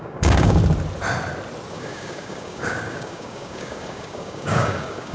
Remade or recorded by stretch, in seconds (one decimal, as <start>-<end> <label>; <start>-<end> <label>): 0.0-0.6 remade; 0.6-1.7 recorded; 1.7-5.1 remade